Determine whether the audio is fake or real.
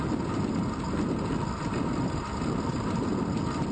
real